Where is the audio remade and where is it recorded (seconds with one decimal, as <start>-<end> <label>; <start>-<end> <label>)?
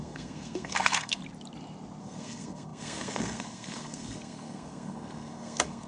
0.0-1.2 remade; 1.2-2.0 recorded; 2.0-5.9 remade